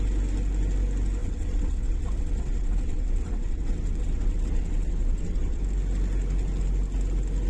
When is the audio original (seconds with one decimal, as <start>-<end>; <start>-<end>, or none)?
0.0-1.2; 5.6-7.5